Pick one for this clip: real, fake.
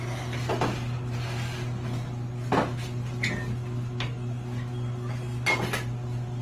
real